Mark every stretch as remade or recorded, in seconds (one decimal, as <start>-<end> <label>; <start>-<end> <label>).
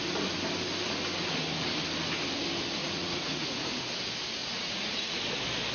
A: 0.0-2.8 recorded; 2.8-3.6 remade; 3.6-4.4 recorded; 4.4-5.2 remade; 5.2-5.7 recorded